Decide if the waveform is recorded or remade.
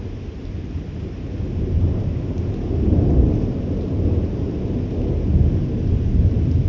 recorded